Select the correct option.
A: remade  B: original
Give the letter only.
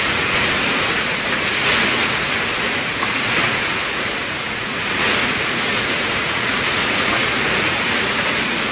A